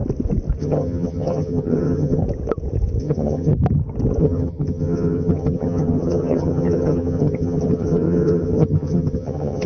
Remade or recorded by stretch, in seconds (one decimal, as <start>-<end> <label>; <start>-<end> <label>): 0.0-0.6 recorded; 0.6-2.2 remade; 2.2-3.0 recorded; 3.0-3.5 remade; 3.5-4.2 recorded; 4.2-9.7 remade